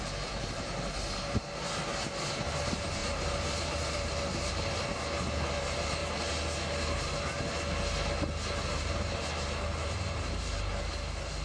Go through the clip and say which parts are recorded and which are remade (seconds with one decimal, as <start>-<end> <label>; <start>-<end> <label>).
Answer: 0.0-6.0 remade; 6.0-8.7 recorded; 8.7-11.4 remade